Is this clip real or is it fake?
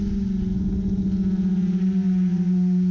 real